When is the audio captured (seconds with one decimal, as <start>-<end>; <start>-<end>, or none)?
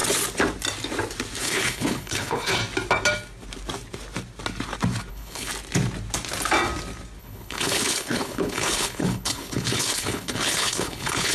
0.0-1.4; 2.6-5.1; 5.5-7.2